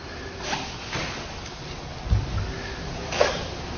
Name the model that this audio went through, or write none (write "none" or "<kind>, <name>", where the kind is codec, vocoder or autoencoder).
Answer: none